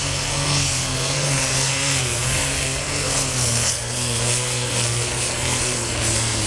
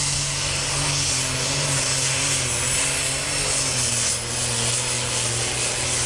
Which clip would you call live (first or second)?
second